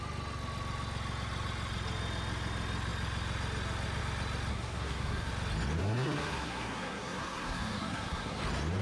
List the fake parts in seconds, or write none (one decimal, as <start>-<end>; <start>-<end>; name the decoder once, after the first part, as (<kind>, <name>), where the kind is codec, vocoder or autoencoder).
4.5-5.3 (codec, SNAC); 5.8-8.4